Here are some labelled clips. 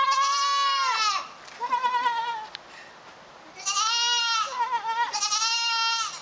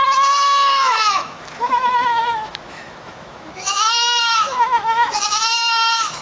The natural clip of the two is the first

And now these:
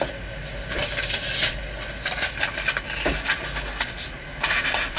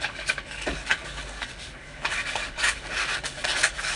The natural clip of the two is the first